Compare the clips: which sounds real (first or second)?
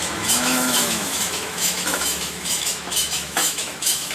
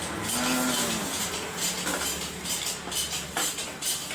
second